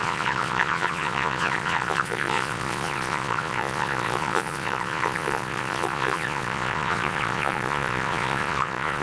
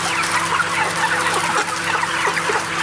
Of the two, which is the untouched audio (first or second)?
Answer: second